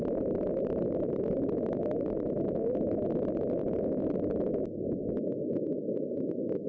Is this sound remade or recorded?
recorded